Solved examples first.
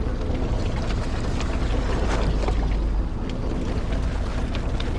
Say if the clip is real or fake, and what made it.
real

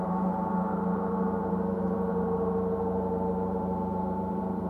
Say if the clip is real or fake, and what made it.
fake, vocoder, BigVGAN v2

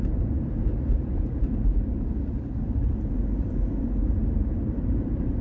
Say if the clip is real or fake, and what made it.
fake, vocoder, BigVGAN v2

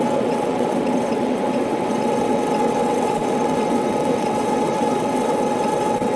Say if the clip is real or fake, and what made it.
fake, vocoder, WaveNeXt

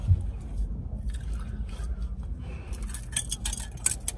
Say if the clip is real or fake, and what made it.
real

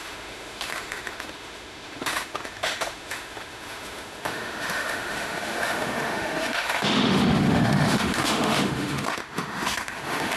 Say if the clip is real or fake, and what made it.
fake, autoencoder, DAC-VAE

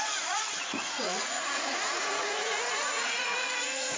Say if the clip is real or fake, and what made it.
fake, vocoder, Vocos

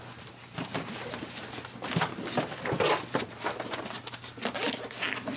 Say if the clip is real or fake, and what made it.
real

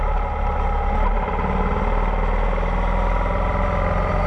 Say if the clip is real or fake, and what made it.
real